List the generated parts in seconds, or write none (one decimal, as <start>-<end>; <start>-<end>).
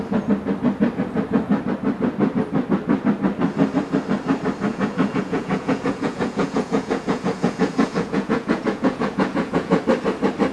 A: 4.7-9.8